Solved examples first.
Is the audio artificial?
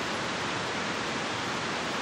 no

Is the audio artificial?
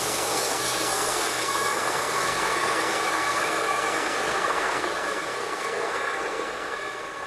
yes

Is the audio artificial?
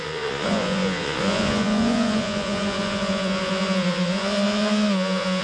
yes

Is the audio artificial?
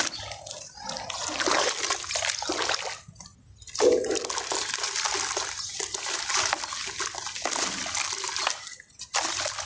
no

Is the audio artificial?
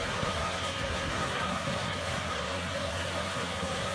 yes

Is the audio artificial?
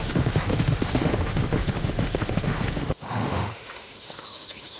yes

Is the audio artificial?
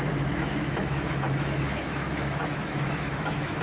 yes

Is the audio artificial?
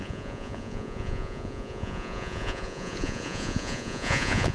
yes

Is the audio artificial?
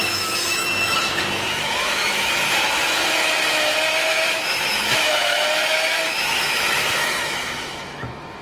yes